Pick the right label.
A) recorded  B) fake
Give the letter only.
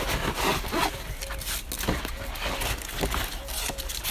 A